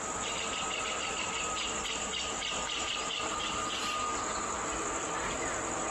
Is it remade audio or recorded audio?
remade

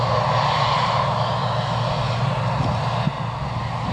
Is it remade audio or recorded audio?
recorded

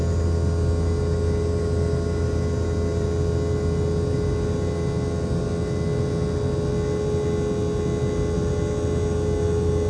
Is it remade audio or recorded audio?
recorded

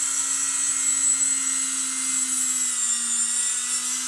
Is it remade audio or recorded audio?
recorded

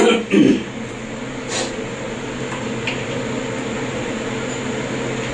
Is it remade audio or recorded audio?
recorded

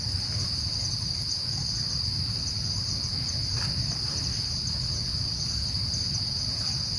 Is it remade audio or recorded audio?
recorded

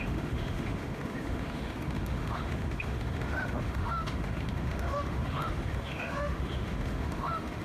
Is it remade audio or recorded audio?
remade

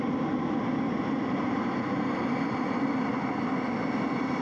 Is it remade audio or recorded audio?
recorded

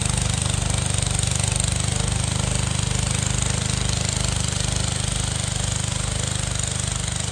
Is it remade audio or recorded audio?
recorded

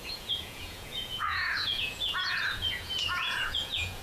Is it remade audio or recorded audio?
remade